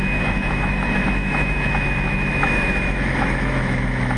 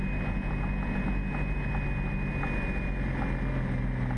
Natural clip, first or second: second